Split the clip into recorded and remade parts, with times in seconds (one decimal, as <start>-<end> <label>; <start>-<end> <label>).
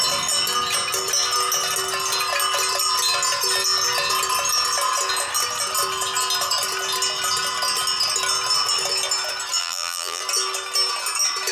0.0-9.6 recorded; 9.6-10.2 remade; 10.2-11.5 recorded